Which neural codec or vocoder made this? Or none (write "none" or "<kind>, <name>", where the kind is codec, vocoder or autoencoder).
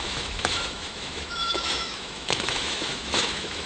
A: autoencoder, DAC-VAE